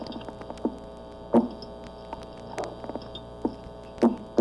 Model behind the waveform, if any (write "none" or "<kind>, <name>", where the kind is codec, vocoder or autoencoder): none